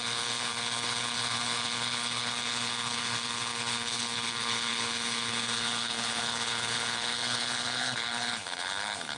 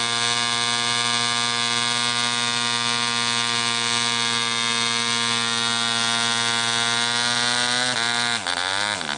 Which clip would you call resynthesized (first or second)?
first